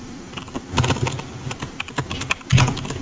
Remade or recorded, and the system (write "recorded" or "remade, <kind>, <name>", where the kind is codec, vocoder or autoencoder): recorded